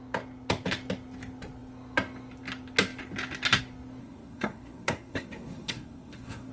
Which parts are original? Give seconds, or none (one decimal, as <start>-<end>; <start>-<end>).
0.0-4.0